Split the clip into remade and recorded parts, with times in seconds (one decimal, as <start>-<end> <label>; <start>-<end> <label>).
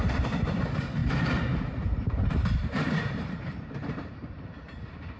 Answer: 0.0-1.0 recorded; 1.0-4.1 remade; 4.1-5.2 recorded